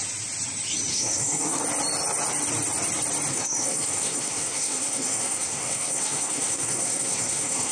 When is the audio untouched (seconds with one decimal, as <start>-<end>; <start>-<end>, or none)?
0.0-0.9; 1.6-3.3